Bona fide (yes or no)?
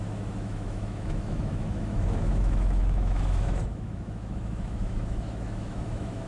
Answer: no